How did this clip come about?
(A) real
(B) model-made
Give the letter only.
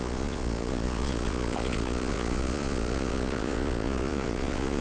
B